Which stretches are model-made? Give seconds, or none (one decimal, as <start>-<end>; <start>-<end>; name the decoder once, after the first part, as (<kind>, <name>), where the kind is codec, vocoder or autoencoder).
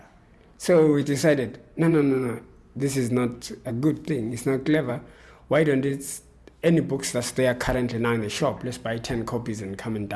0.9-2.4 (vocoder, Vocos)